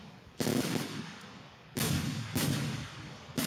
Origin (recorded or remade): remade